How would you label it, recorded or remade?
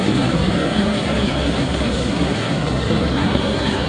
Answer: remade